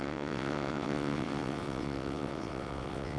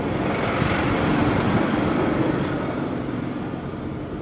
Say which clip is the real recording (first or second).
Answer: second